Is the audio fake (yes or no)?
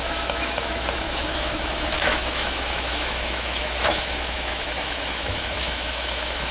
yes